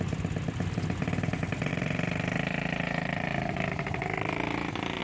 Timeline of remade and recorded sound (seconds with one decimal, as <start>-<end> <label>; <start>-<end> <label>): 0.0-1.7 recorded; 1.7-5.0 remade